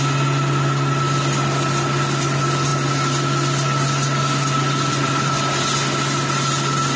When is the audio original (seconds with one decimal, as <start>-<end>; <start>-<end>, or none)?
0.0-7.0